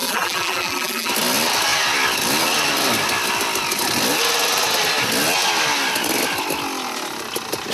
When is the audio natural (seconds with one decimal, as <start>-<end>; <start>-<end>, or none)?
1.1-7.7